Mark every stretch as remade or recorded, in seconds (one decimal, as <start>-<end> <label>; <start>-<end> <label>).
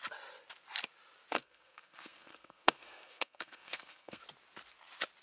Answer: 0.0-1.3 recorded; 1.3-4.2 remade; 4.2-5.2 recorded